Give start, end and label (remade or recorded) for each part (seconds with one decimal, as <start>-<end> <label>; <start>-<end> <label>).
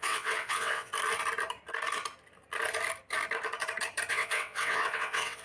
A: 0.0-0.9 remade; 0.9-4.1 recorded; 4.1-5.4 remade